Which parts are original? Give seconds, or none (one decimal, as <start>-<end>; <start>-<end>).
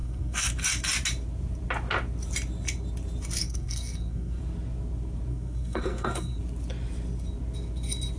0.5-3.4; 4.4-5.3; 6.4-8.2